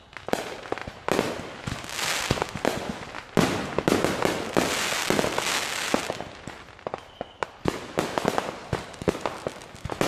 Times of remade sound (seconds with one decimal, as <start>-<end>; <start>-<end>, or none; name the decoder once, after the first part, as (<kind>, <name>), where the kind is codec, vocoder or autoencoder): none